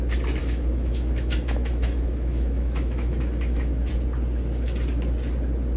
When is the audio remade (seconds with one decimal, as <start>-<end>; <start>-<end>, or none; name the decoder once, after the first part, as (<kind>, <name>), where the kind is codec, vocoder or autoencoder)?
0.4-3.9 (autoencoder, DAC-VAE)